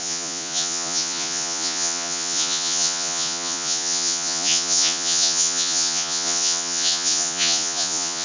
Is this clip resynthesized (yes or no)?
yes